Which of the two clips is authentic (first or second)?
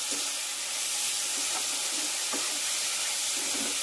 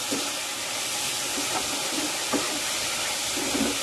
first